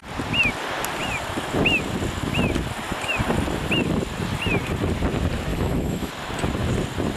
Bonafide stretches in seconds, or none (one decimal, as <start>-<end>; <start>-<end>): 0.0-5.5; 6.1-7.2